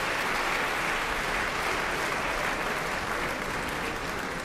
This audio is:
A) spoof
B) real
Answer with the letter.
B